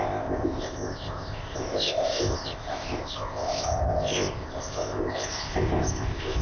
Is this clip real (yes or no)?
no